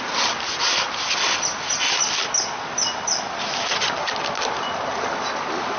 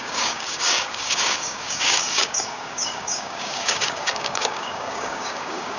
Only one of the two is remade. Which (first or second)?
second